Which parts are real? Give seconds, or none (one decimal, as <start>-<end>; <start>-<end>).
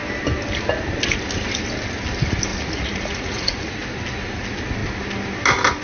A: 0.0-2.5; 3.7-5.8